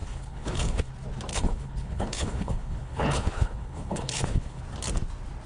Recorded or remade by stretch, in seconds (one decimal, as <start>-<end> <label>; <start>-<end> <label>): 0.0-0.9 remade; 0.9-1.3 recorded; 1.3-4.6 remade; 4.6-5.5 recorded